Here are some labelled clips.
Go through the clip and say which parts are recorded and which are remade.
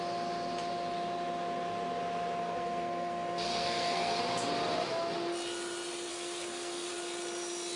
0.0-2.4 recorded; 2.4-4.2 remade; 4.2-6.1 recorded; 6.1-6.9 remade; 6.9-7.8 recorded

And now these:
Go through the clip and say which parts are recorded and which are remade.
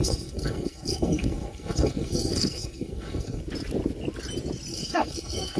0.0-3.4 remade; 3.4-4.7 recorded; 4.7-5.6 remade